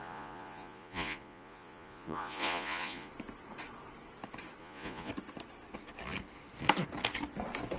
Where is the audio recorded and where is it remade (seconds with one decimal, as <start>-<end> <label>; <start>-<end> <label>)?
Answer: 0.0-3.1 remade; 3.1-4.6 recorded; 4.6-5.1 remade; 5.1-7.8 recorded